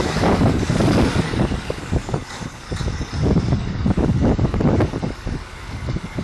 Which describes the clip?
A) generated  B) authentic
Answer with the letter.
A